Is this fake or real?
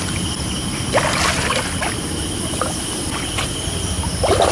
real